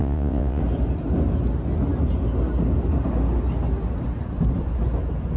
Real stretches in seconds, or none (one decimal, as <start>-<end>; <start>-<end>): 0.6-5.4